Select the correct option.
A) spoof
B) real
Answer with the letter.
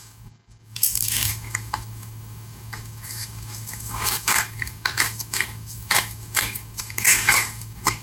A